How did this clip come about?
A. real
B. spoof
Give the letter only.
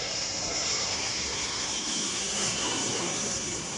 B